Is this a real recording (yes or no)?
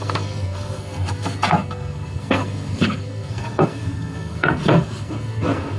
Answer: no